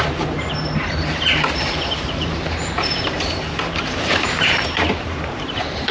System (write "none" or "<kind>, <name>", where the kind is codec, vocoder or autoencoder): vocoder, BigVGAN v2